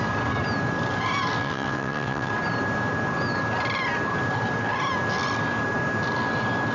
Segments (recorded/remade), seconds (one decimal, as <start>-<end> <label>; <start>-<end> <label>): 0.0-1.4 recorded; 1.4-2.3 remade; 2.3-6.7 recorded